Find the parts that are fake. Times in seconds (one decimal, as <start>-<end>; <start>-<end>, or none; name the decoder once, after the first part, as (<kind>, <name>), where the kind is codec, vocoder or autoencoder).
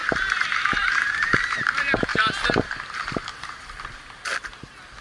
0.8-2.1 (vocoder, BigVGAN v2); 3.6-4.3